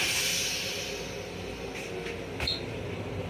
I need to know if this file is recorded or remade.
recorded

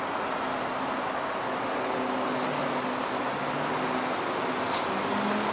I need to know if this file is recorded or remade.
recorded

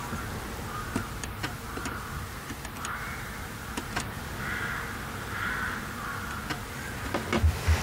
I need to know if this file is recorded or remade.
recorded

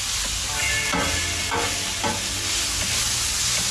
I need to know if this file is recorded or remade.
recorded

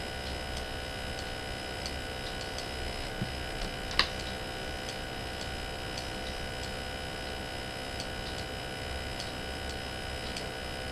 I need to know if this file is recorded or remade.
recorded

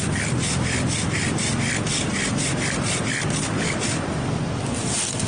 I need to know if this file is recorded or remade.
recorded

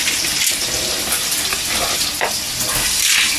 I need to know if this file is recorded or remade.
recorded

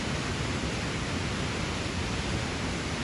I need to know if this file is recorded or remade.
recorded